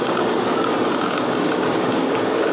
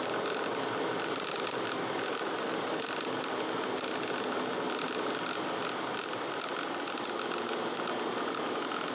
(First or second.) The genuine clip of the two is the second